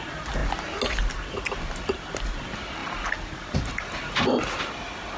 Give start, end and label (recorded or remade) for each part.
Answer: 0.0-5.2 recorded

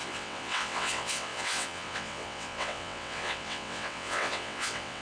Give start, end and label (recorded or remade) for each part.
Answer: 0.0-5.0 remade

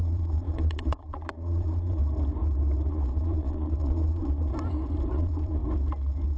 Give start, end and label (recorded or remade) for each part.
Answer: 0.0-2.0 remade; 2.0-2.9 recorded; 2.9-4.5 remade; 4.5-5.1 recorded; 5.1-5.6 remade; 5.6-6.4 recorded

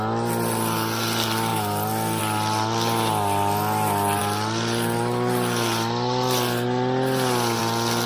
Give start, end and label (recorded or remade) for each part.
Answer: 0.0-8.1 recorded

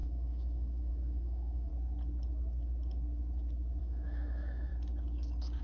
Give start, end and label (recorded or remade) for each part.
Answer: 0.0-1.7 remade; 1.7-3.8 recorded; 3.8-4.7 remade; 4.7-5.6 recorded

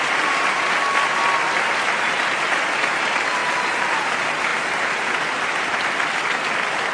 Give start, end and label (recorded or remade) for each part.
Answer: 0.0-6.9 recorded

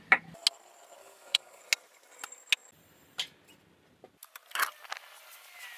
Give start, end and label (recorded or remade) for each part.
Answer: 0.0-1.0 recorded; 1.0-1.6 remade; 1.6-5.8 recorded